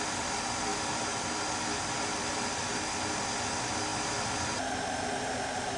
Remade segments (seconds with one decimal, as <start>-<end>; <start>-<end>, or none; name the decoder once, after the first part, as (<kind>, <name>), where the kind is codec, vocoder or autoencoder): none